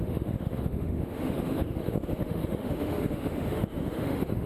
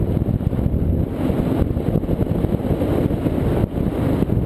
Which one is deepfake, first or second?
first